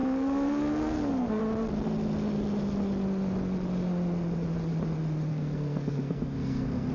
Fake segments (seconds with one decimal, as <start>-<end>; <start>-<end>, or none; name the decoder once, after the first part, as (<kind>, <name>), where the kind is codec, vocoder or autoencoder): 0.0-1.4 (codec, SNAC); 5.3-6.9